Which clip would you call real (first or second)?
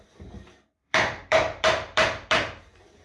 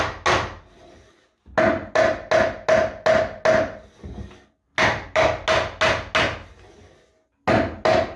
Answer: second